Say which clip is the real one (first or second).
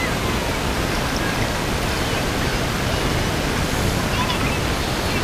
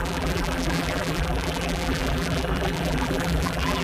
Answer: first